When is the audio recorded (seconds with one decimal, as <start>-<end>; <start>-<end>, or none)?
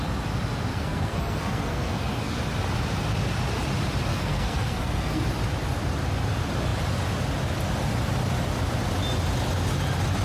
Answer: 0.0-0.7; 2.4-4.1; 5.2-10.2